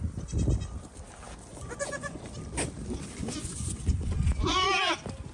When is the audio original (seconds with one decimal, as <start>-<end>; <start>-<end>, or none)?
0.0-1.5; 2.2-3.2; 4.7-5.3